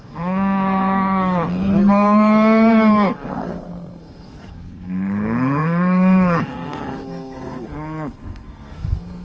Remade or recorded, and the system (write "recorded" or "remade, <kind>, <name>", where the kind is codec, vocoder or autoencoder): remade, codec, SNAC